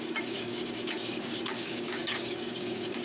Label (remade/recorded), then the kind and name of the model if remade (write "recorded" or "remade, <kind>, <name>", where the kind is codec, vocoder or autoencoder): remade, codec, DAC